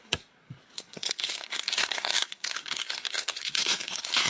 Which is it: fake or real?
fake